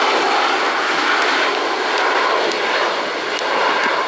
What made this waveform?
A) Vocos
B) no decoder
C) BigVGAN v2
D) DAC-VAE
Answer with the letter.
B